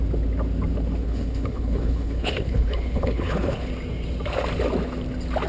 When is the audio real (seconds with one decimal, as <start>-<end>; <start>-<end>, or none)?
0.0-1.0; 3.7-5.5